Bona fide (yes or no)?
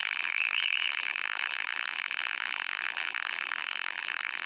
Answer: no